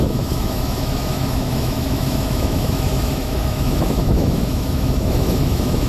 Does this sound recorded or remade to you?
remade